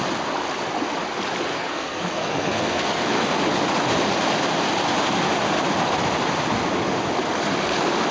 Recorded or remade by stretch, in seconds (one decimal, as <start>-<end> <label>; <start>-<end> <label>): 0.0-1.5 recorded; 1.5-3.1 remade; 3.1-8.1 recorded